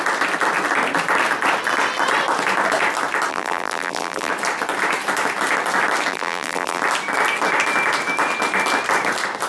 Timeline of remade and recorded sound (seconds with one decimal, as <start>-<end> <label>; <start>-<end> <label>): 0.0-3.3 recorded; 3.3-4.3 remade; 4.3-6.1 recorded; 6.1-6.8 remade; 6.8-9.5 recorded